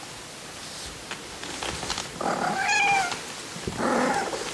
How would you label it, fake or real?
real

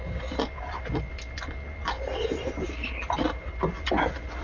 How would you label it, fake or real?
real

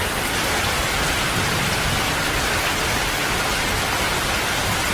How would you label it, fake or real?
real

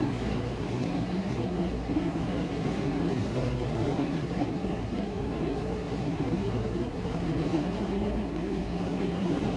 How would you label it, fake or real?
fake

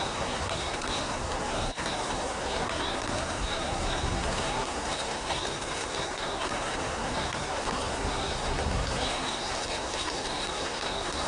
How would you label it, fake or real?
fake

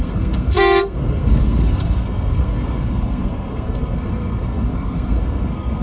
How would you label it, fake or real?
fake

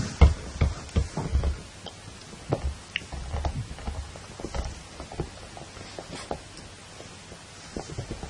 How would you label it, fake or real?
real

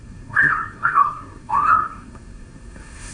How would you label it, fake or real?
fake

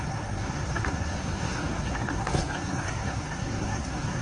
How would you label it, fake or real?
fake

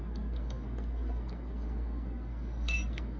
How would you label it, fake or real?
fake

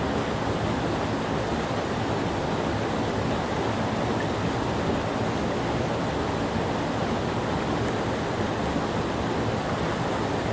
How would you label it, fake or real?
real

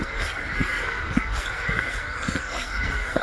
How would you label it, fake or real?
fake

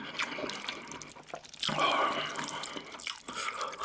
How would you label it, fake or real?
real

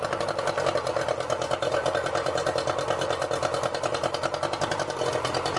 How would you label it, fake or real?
real